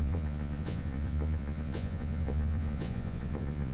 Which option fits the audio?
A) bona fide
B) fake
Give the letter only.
B